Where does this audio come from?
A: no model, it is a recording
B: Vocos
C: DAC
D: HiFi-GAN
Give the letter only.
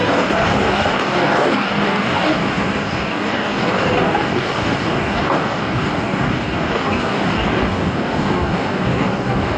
C